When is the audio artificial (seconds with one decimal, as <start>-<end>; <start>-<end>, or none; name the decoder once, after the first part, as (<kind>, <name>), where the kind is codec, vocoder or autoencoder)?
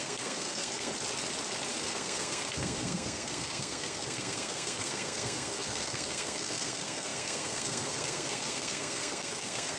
0.0-0.9 (codec, SNAC); 1.7-9.8